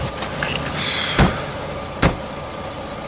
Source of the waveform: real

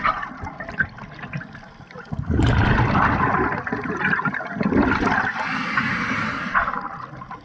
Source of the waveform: real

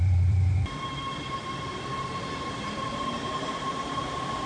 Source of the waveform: fake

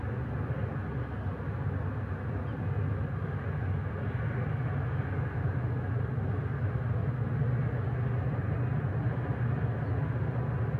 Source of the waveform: real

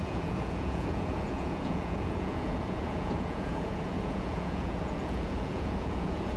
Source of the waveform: fake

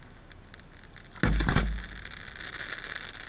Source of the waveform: real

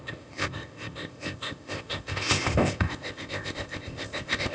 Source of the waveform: fake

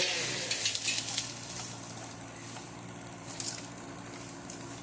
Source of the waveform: real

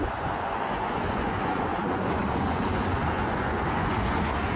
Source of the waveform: fake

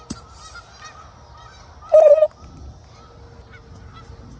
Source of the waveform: real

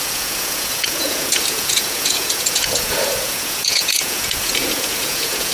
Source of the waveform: fake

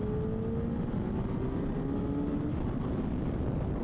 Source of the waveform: real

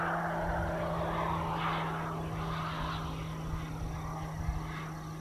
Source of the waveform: real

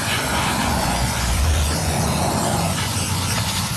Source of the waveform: fake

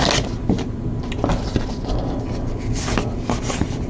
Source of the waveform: real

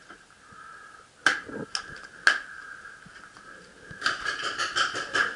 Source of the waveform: real